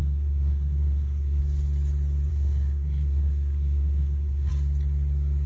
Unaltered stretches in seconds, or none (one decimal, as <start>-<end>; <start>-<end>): 1.4-2.3; 4.5-5.5